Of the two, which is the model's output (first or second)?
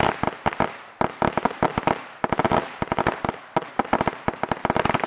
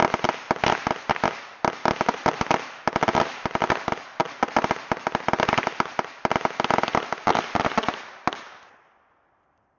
first